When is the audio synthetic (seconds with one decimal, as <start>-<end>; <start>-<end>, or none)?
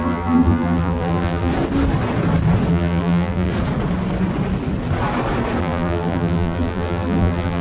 0.0-1.5; 2.7-3.5; 5.6-7.6